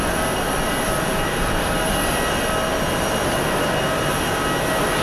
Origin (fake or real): real